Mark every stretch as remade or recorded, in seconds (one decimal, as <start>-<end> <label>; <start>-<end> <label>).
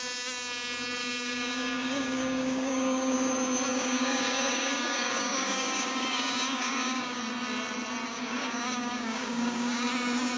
0.0-1.0 recorded; 1.0-3.3 remade; 3.3-3.7 recorded; 3.7-7.2 remade; 7.2-8.1 recorded; 8.1-9.9 remade; 9.9-10.4 recorded